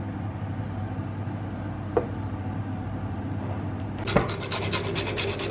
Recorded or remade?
recorded